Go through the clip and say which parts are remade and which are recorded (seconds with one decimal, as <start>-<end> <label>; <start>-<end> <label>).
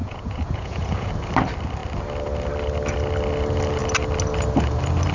0.0-1.1 remade; 1.1-5.1 recorded